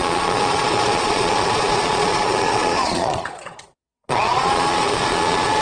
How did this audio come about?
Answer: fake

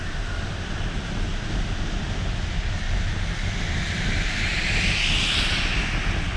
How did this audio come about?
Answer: real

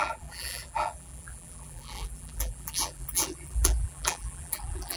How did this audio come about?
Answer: fake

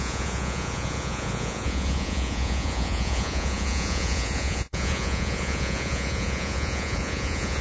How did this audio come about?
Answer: fake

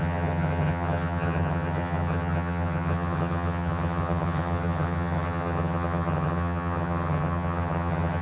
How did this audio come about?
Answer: fake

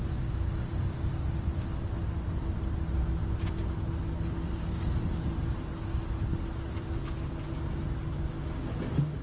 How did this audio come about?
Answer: real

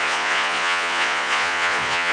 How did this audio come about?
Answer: fake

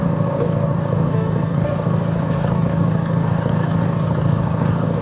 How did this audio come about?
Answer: fake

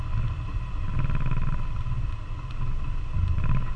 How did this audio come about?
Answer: real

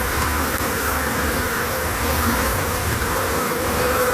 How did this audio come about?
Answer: fake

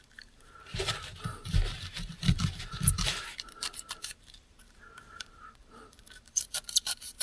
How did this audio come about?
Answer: fake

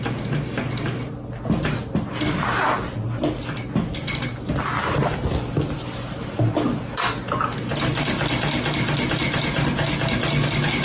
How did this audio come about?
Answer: real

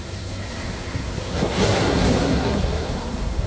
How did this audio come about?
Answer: fake